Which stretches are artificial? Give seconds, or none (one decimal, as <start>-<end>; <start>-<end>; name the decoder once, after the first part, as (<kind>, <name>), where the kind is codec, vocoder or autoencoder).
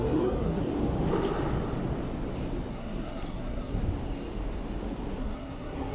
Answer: 0.0-0.7 (codec, SNAC); 2.7-3.8; 5.2-5.9